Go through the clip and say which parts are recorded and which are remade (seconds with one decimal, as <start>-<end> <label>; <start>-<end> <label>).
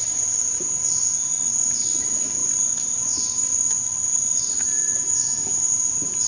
0.0-6.3 recorded